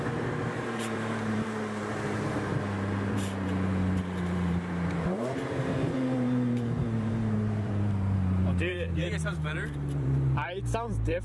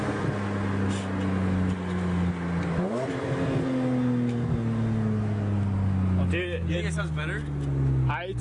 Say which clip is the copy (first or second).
first